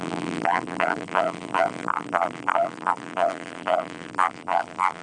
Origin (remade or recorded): remade